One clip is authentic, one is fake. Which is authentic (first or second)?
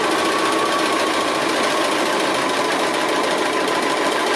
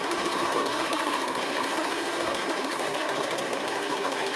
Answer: first